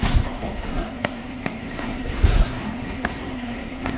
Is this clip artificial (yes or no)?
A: yes